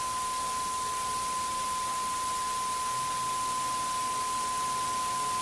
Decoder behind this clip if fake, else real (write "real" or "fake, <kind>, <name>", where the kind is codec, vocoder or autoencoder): real